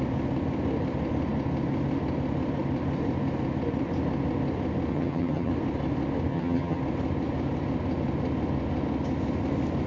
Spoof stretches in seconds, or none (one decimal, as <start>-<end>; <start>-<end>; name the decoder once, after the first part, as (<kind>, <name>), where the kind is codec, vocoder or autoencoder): 4.9-5.5 (vocoder, HiFi-GAN); 6.3-6.8